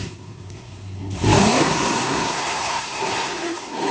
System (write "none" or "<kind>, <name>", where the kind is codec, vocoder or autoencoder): codec, SNAC